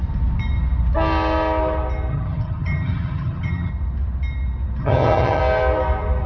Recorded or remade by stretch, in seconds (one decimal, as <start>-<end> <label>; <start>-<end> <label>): 0.0-2.1 recorded; 2.1-3.7 remade; 3.7-4.8 recorded; 4.8-5.4 remade; 5.4-6.3 recorded